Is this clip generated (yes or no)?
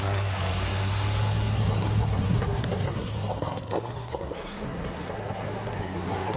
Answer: yes